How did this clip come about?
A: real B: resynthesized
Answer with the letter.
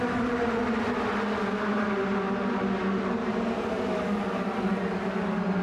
A